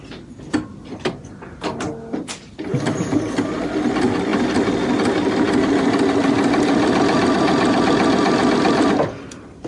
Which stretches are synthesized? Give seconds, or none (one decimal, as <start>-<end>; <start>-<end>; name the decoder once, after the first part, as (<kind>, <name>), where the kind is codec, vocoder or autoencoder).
2.7-3.2 (vocoder, BigVGAN v2)